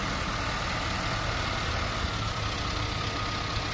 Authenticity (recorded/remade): recorded